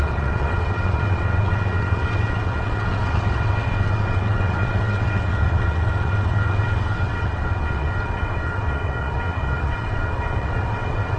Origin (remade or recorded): remade